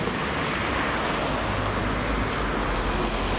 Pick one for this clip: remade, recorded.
recorded